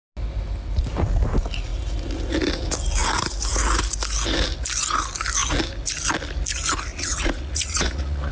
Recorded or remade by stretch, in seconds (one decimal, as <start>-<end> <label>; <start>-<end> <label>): 0.0-6.9 recorded; 6.9-8.3 remade